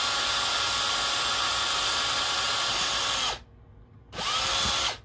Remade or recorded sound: recorded